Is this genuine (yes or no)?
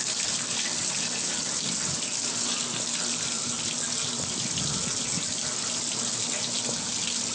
yes